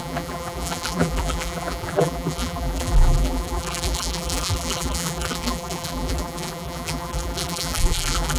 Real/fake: fake